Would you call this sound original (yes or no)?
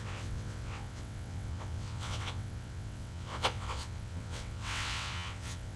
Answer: no